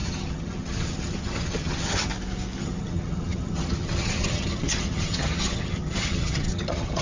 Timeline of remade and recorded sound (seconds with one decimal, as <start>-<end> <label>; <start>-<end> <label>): 0.0-2.1 remade; 2.1-2.6 recorded; 2.6-7.0 remade